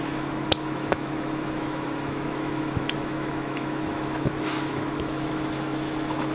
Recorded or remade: remade